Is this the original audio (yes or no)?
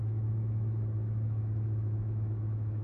no